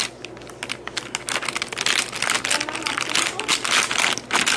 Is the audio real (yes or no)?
yes